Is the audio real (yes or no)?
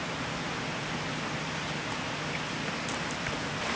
yes